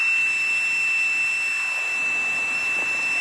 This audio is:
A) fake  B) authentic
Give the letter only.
B